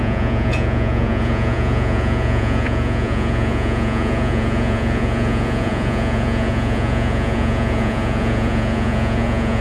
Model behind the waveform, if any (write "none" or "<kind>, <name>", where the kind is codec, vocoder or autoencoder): vocoder, Vocos